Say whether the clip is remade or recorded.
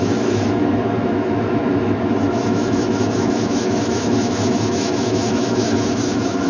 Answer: remade